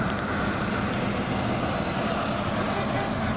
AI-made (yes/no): no